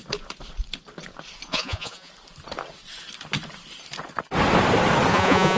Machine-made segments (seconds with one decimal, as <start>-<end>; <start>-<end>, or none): 1.5-2.1; 5.1-5.6